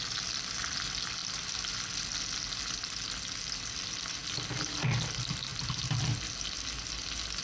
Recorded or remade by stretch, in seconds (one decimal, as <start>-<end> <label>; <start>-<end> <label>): 0.0-7.4 recorded